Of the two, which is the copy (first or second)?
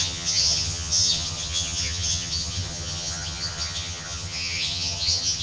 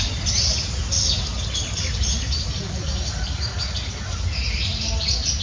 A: first